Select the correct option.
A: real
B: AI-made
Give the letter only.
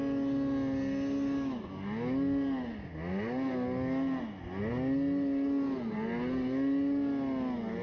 A